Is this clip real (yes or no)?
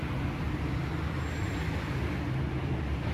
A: yes